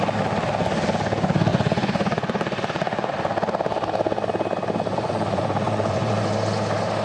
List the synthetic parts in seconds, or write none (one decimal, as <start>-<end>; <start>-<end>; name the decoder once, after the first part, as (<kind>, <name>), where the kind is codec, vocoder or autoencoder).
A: 1.5-3.1 (vocoder, Vocos); 4.9-6.2